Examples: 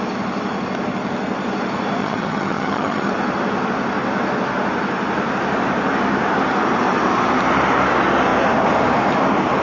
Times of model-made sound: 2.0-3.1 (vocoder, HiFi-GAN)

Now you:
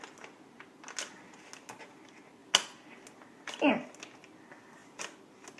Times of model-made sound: none